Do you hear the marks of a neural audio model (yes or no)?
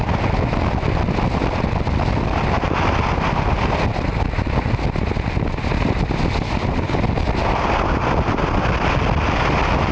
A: no